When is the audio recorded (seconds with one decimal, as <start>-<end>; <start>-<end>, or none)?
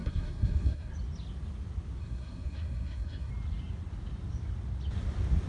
0.9-2.0; 3.3-5.5